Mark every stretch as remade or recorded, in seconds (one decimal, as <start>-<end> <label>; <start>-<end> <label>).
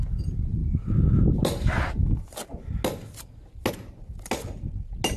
0.0-5.2 recorded